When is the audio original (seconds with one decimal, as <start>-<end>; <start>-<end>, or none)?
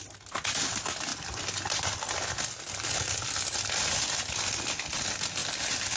0.0-1.1; 2.3-5.4